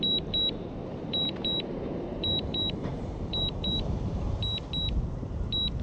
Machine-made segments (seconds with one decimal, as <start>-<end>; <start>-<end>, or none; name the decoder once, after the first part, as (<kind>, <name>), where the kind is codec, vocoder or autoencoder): 0.9-4.4 (vocoder, BigVGAN v2)